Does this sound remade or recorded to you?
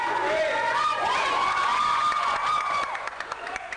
remade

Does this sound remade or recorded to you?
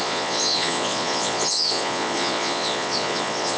remade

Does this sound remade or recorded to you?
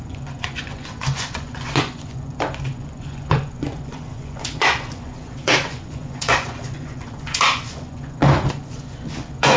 remade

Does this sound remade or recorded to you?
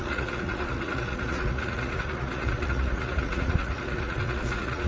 remade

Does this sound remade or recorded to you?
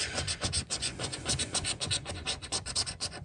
remade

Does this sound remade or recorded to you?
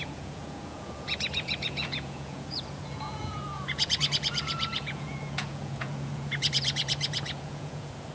remade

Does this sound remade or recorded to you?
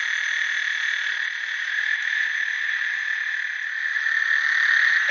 recorded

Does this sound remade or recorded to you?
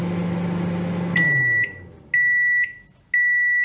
recorded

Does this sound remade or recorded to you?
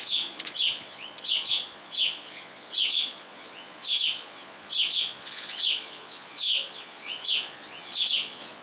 remade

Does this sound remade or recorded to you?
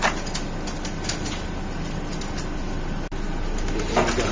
recorded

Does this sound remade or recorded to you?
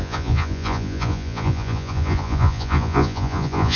remade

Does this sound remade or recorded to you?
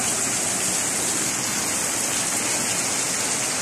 recorded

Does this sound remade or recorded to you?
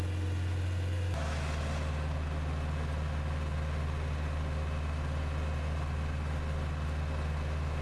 recorded